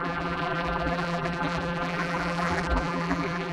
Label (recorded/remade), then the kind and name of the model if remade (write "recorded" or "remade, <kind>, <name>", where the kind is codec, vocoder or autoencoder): remade, vocoder, BigVGAN v2